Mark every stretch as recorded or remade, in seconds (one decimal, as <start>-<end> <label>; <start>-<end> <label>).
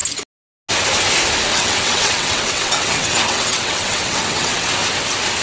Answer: 0.0-1.5 recorded; 1.5-4.7 remade; 4.7-5.4 recorded